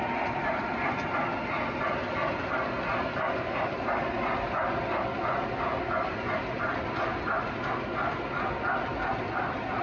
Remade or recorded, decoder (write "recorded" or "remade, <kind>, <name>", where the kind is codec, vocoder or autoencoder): recorded